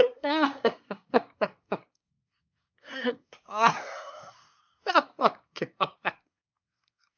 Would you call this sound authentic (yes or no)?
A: no